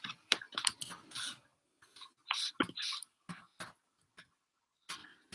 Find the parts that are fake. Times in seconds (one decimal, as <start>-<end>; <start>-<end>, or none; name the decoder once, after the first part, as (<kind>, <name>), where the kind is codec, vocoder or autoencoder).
none